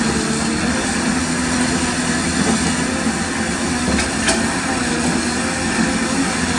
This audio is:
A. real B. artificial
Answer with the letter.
A